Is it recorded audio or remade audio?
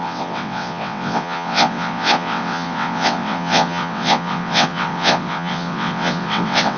remade